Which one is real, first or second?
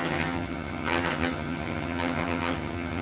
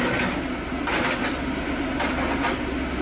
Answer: second